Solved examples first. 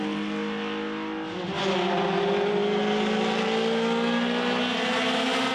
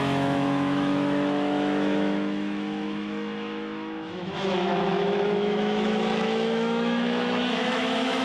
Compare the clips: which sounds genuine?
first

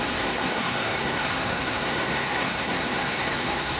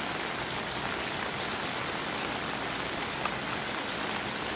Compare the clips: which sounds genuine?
second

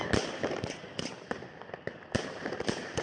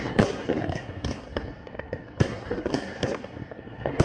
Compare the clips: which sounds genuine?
first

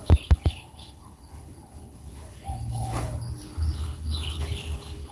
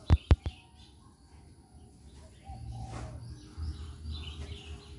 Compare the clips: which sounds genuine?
second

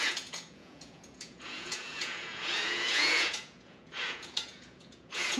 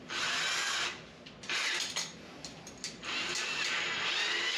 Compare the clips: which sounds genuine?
second